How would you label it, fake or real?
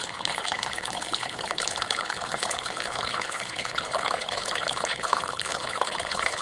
fake